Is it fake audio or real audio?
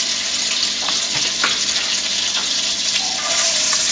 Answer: real